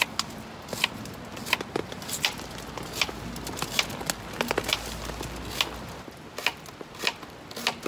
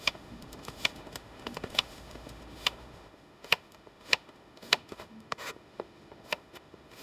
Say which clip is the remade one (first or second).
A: second